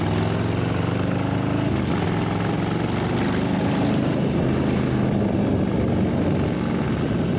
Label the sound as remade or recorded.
recorded